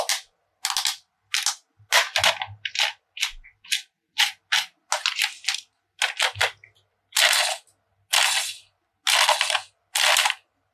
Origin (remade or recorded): recorded